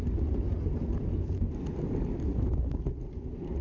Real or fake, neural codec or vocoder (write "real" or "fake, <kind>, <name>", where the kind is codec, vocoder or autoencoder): real